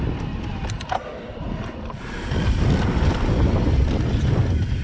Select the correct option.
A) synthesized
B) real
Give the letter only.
B